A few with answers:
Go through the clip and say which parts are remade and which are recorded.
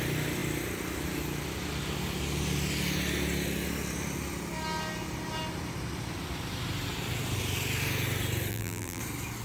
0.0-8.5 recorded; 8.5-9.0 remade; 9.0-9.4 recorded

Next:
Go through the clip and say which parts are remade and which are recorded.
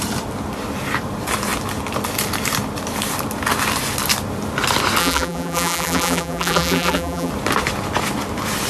0.0-5.0 recorded; 5.0-7.3 remade; 7.3-8.7 recorded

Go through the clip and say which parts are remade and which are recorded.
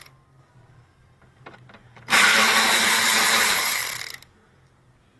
0.0-1.8 recorded; 1.8-3.8 remade; 3.8-5.2 recorded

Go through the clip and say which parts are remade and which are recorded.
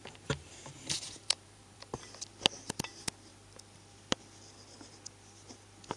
0.0-1.9 remade; 1.9-6.0 recorded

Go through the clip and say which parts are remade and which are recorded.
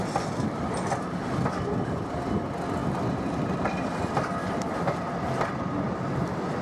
0.0-2.8 recorded; 2.8-3.8 remade; 3.8-6.6 recorded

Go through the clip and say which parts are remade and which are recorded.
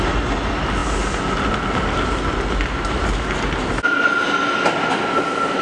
0.0-2.7 recorded; 2.7-4.0 remade; 4.0-5.6 recorded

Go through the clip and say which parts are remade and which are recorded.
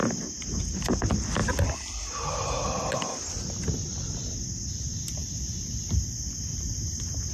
0.0-7.3 recorded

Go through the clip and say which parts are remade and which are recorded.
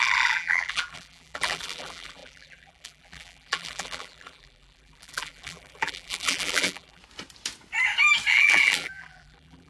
0.0-7.0 remade; 7.0-8.3 recorded; 8.3-9.7 remade